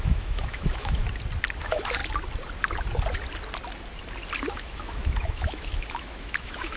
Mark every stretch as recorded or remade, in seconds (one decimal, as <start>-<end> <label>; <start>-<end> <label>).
0.0-1.0 remade; 1.0-1.6 recorded; 1.6-2.0 remade; 2.0-4.5 recorded; 4.5-6.8 remade